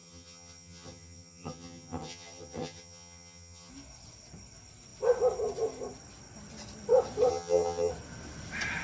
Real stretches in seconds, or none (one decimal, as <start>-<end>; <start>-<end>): 3.7-7.3; 7.9-8.8